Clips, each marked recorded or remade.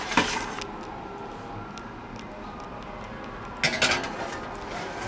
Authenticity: recorded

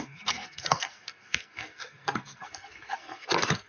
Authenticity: remade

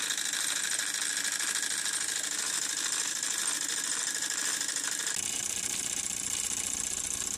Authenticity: recorded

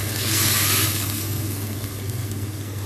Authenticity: remade